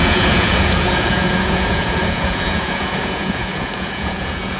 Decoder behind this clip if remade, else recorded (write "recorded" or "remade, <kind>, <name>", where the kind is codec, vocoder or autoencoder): remade, vocoder, Vocos